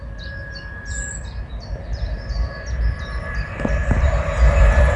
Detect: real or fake fake